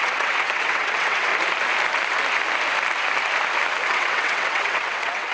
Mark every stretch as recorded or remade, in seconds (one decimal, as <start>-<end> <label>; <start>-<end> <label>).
0.0-1.3 remade; 1.3-3.9 recorded; 3.9-5.3 remade